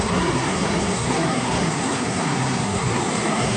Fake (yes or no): yes